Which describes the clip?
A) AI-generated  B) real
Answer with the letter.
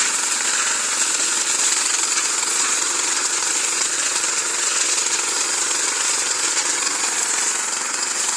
A